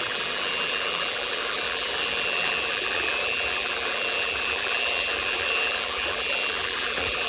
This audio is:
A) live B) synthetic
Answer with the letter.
B